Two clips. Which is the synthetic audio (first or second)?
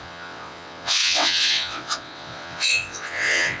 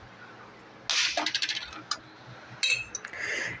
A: first